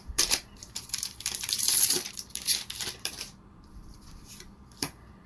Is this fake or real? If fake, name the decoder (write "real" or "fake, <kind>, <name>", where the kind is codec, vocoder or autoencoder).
fake, vocoder, BigVGAN v2